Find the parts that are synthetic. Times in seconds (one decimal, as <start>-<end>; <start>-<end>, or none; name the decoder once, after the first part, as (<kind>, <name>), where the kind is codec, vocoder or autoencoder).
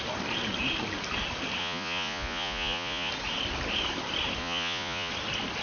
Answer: 1.6-3.1 (vocoder, Vocos); 4.4-5.1